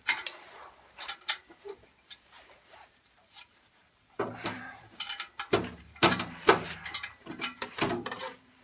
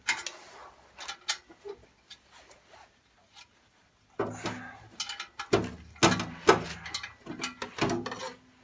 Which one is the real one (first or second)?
second